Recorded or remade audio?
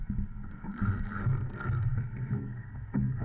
remade